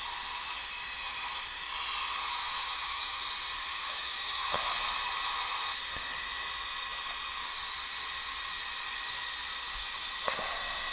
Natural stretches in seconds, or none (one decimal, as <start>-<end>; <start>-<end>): 0.0-2.4; 3.2-3.7; 4.6-10.9